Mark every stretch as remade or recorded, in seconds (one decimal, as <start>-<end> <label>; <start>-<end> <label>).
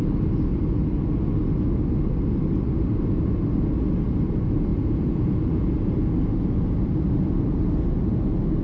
0.0-4.7 recorded; 4.7-5.7 remade; 5.7-8.6 recorded